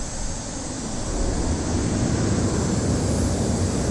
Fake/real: real